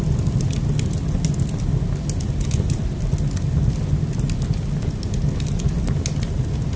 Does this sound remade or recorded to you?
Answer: recorded